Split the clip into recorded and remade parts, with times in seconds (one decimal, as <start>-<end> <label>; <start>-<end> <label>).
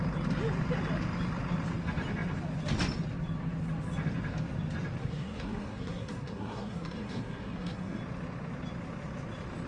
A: 0.0-5.0 recorded; 5.0-8.0 remade; 8.0-9.7 recorded